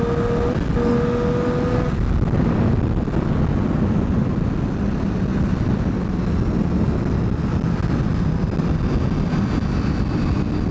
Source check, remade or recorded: recorded